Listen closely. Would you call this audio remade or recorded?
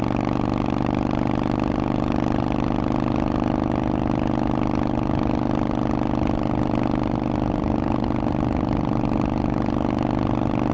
recorded